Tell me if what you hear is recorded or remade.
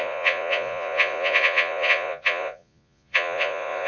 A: remade